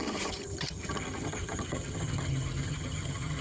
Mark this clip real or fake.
fake